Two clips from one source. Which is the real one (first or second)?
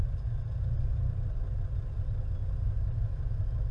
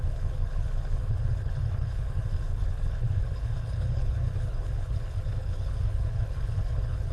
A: first